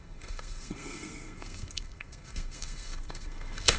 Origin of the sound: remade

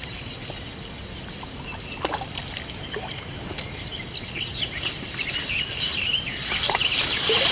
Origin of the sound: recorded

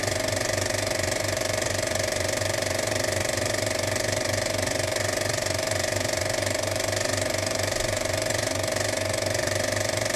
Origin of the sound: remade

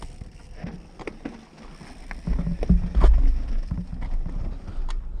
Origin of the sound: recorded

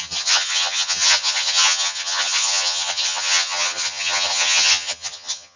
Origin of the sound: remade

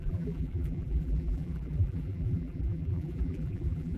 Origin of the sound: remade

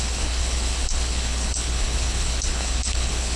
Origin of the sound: remade